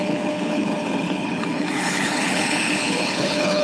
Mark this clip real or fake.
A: fake